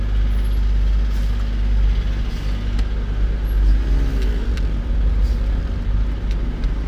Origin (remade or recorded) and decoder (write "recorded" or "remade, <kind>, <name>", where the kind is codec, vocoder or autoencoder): recorded